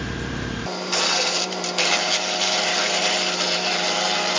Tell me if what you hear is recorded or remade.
remade